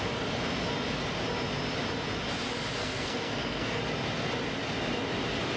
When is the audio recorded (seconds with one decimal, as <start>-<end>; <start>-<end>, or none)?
0.0-2.8; 3.8-5.6